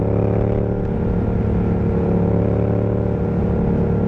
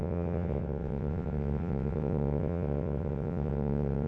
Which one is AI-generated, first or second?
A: second